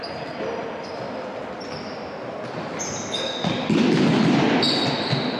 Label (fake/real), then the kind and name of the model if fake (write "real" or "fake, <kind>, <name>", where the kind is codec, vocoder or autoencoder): real